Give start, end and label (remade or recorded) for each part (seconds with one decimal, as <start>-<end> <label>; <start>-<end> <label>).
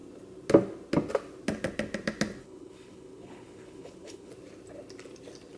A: 0.0-2.4 recorded; 2.4-4.3 remade; 4.3-5.6 recorded